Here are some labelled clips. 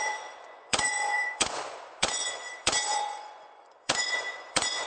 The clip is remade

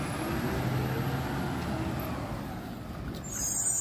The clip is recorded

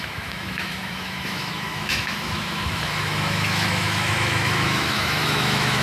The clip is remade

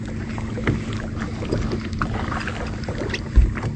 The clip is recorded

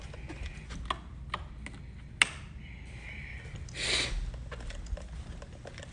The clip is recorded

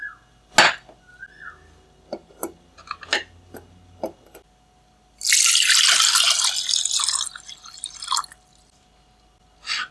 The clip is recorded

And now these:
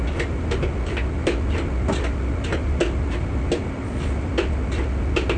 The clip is recorded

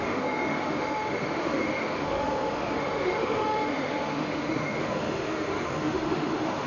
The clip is remade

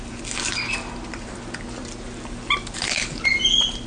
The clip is recorded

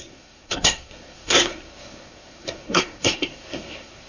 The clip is remade